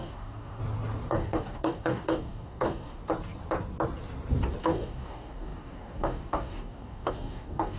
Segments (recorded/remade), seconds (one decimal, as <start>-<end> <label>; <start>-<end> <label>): 0.0-0.6 remade; 0.6-1.1 recorded; 1.1-3.0 remade; 3.0-4.6 recorded; 4.6-7.8 remade